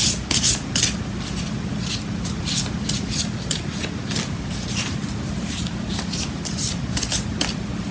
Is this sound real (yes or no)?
yes